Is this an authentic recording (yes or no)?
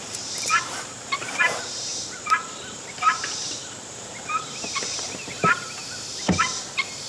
no